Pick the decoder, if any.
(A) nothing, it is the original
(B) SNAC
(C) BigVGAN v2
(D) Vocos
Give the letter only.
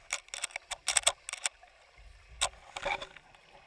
A